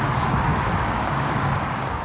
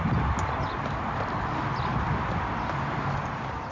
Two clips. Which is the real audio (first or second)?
second